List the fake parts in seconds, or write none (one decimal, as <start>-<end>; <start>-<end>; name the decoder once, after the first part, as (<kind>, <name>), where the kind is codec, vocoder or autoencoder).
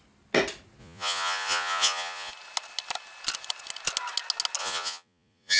0.8-2.3 (vocoder, Vocos); 4.6-5.6